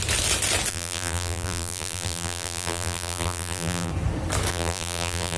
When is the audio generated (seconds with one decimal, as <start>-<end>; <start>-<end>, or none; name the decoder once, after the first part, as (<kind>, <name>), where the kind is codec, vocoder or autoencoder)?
0.7-3.9 (vocoder, BigVGAN v2); 4.5-5.4